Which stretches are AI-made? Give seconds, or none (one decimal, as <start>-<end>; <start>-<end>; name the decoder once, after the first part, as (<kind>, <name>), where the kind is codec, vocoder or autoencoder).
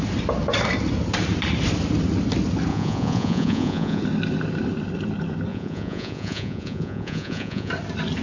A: 2.7-4.0 (vocoder, Vocos); 5.5-7.7